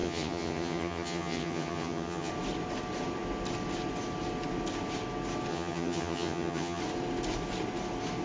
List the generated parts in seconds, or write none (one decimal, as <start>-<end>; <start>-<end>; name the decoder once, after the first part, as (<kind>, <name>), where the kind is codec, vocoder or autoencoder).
0.0-2.3 (vocoder, HiFi-GAN); 5.5-6.8

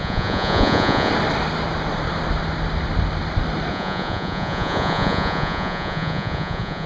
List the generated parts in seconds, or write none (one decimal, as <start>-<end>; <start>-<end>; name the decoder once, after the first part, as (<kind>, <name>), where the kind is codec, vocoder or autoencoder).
0.0-1.1 (vocoder, Vocos); 3.7-6.9